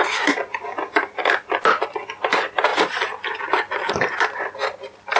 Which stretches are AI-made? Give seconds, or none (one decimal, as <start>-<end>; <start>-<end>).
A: none